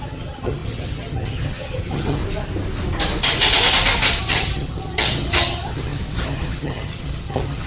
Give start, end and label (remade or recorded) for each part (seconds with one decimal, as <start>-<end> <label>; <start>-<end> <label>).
0.0-2.2 remade; 2.2-4.2 recorded; 4.2-7.7 remade